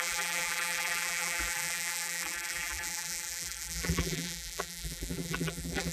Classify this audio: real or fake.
fake